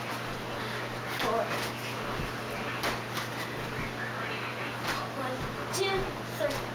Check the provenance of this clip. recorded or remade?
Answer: recorded